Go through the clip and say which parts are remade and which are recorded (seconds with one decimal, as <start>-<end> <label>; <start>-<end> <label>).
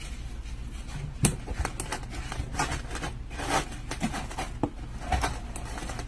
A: 0.0-6.1 recorded